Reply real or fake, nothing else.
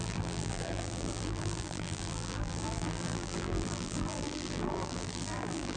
fake